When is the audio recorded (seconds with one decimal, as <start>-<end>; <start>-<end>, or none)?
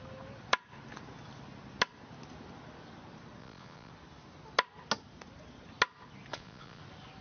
0.0-3.4; 3.9-6.3; 6.8-7.2